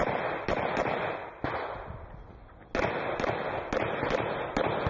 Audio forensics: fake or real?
real